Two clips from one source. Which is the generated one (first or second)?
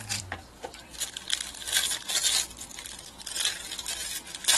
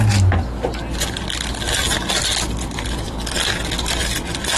first